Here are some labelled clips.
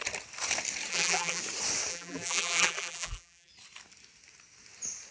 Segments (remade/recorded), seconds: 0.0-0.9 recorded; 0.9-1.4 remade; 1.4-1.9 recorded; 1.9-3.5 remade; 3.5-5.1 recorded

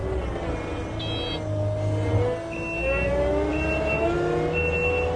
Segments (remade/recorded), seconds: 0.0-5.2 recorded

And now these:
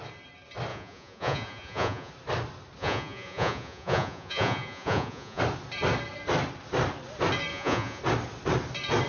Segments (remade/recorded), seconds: 0.0-0.7 recorded; 0.7-2.1 remade; 2.1-2.8 recorded; 2.8-5.4 remade; 5.4-7.5 recorded; 7.5-8.0 remade; 8.0-9.1 recorded

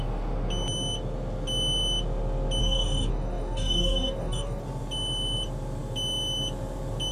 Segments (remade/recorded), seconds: 0.0-2.6 recorded; 2.6-4.6 remade; 4.6-7.1 recorded

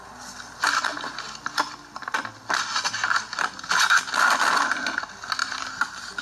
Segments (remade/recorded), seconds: 0.0-5.4 recorded; 5.4-6.2 remade

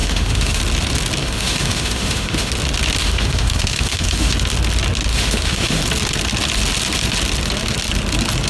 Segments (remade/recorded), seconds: 0.0-0.6 remade; 0.6-1.2 recorded; 1.2-2.5 remade; 2.5-3.0 recorded; 3.0-4.3 remade; 4.3-5.1 recorded; 5.1-5.8 remade; 5.8-8.5 recorded

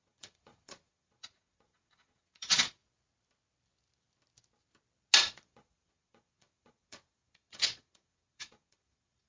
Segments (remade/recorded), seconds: 0.0-2.8 remade; 2.8-5.2 recorded; 5.2-9.3 remade

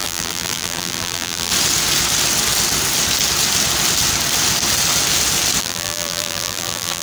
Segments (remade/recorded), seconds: 0.0-1.5 remade; 1.5-5.6 recorded; 5.6-7.0 remade